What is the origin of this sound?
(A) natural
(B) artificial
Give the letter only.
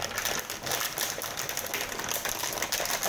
A